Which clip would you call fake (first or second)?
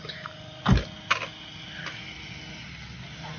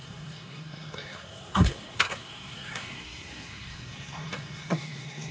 second